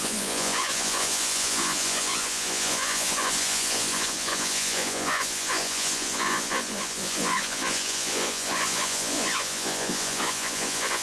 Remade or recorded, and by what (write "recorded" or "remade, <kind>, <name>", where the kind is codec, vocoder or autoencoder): remade, vocoder, Vocos